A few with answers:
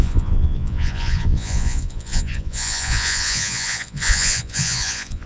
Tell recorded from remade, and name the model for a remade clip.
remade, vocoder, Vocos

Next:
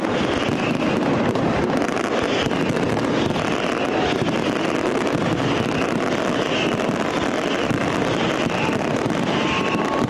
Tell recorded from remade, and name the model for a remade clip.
recorded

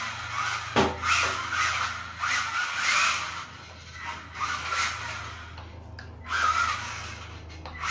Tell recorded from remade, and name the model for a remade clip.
recorded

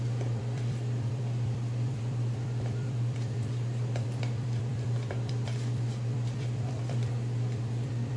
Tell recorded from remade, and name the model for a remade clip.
remade, vocoder, BigVGAN v2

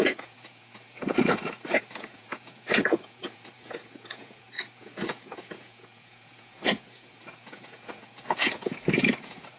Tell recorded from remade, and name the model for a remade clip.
remade, vocoder, Vocos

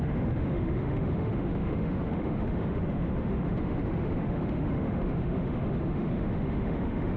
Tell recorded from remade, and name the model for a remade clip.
remade, autoencoder, DAC-VAE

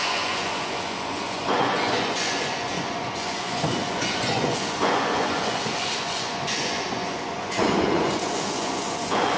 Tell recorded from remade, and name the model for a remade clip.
remade, vocoder, Vocos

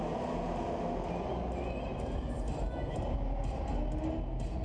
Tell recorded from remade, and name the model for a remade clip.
recorded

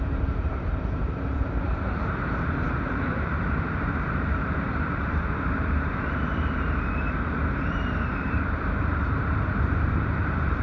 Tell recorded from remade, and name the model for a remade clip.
remade, vocoder, BigVGAN v2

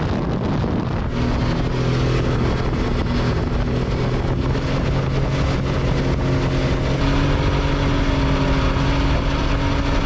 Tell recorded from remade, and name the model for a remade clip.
recorded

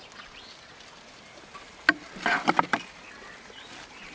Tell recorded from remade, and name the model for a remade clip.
recorded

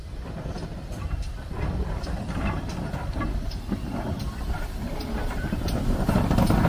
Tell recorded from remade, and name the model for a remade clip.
remade, vocoder, BigVGAN v2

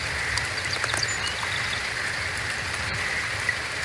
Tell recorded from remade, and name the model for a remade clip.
recorded